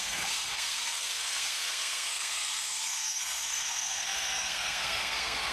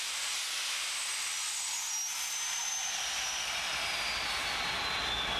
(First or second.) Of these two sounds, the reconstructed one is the first